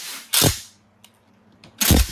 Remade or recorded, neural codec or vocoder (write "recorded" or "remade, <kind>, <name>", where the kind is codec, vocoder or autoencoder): recorded